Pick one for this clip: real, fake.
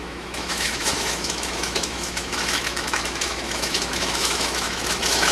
fake